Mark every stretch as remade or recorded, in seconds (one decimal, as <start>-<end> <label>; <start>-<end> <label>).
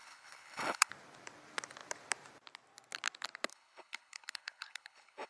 0.0-0.9 remade; 0.9-3.5 recorded; 3.5-5.3 remade